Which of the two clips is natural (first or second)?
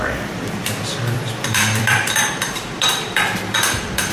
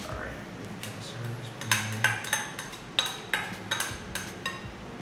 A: second